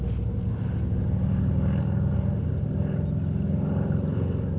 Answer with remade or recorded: recorded